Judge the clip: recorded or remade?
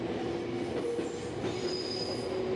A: recorded